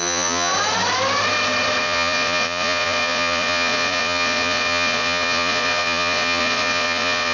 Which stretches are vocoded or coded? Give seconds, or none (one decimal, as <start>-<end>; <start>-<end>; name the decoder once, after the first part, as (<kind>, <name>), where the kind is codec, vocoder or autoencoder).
0.0-0.5 (vocoder, Vocos); 1.8-7.3